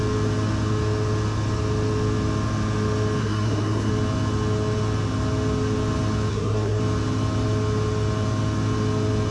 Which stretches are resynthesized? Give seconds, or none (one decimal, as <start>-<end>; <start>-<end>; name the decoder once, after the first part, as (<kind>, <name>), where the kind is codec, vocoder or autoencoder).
3.2-3.9 (codec, SNAC); 6.3-6.8